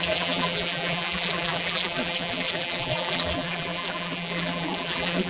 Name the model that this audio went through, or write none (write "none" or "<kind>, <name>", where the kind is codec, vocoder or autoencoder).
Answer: vocoder, BigVGAN v2